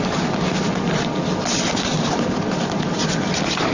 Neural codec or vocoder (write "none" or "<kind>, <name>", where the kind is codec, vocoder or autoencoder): none